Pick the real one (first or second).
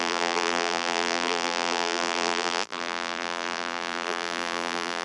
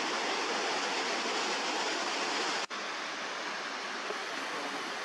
second